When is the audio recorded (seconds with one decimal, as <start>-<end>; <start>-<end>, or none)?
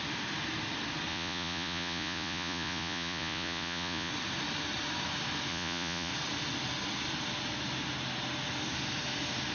0.0-1.1; 4.1-5.5; 6.1-9.5